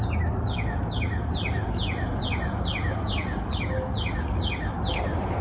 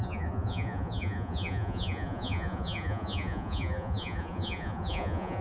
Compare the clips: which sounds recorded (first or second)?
first